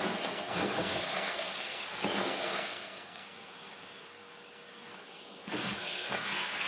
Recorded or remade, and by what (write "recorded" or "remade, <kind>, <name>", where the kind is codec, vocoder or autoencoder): remade, codec, SNAC